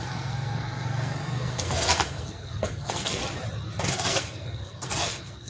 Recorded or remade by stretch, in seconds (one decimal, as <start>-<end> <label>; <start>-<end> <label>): 0.0-3.2 remade; 3.2-3.8 recorded; 3.8-5.5 remade